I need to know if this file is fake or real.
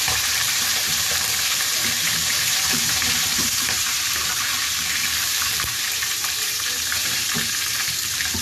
fake